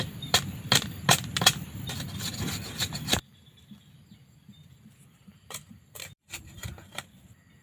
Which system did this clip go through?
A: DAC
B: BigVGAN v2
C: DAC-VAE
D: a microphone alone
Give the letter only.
B